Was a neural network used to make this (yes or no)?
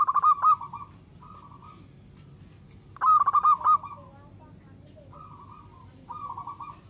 no